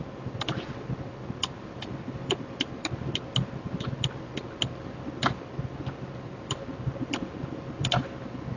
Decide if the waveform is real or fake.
real